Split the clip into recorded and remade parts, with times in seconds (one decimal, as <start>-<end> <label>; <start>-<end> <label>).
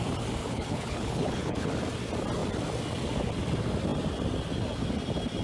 0.0-0.4 recorded; 0.4-1.7 remade; 1.7-5.4 recorded